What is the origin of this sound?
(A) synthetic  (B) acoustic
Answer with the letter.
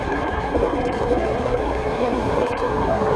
A